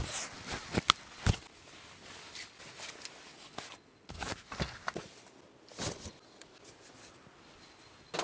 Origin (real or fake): real